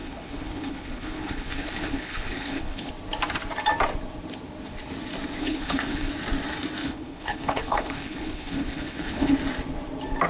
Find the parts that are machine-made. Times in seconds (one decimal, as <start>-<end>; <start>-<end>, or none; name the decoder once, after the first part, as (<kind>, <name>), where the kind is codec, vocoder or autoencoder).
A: 0.0-2.9 (codec, HILCodec); 5.4-6.1; 6.8-9.3